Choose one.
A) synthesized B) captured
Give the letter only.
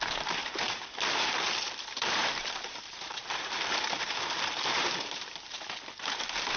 A